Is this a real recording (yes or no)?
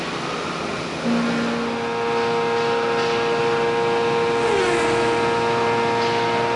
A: yes